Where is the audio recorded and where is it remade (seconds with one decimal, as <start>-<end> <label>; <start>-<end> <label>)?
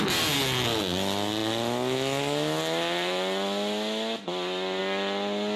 0.0-5.6 recorded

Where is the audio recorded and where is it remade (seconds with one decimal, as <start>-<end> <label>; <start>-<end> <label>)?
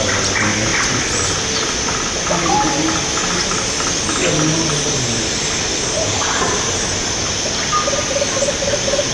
0.0-9.1 recorded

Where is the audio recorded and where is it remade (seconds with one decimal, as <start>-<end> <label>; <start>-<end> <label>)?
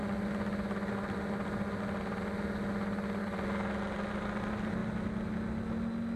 0.0-6.2 recorded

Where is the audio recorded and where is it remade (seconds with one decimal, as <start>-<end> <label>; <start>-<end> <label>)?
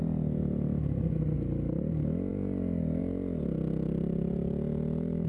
0.0-5.3 recorded